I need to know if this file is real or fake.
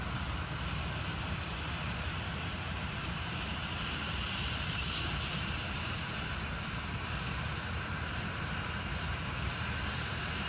fake